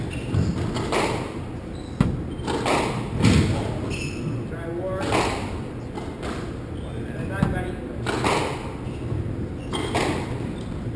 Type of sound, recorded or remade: recorded